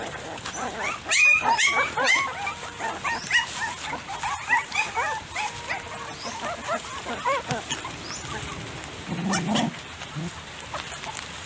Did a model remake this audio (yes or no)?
no